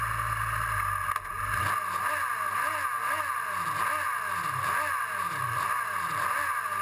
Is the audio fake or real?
real